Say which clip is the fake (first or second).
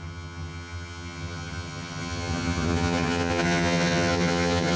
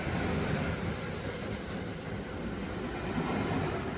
first